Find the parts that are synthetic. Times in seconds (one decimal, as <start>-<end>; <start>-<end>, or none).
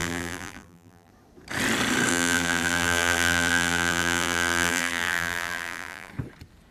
0.0-1.1; 2.1-6.1